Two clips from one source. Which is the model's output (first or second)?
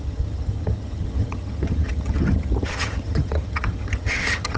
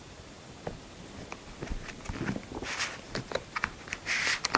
first